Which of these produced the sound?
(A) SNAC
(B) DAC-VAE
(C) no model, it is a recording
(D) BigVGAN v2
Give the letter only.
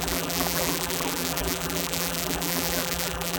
D